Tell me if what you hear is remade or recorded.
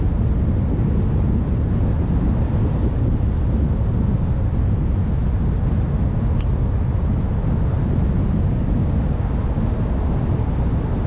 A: recorded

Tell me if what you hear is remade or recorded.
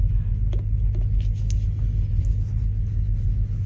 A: recorded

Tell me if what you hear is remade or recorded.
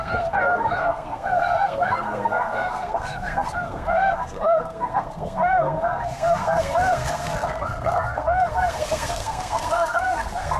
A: remade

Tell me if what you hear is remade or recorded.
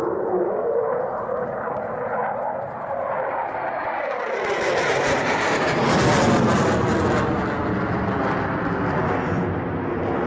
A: recorded